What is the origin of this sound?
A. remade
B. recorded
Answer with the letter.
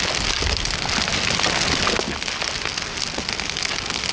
B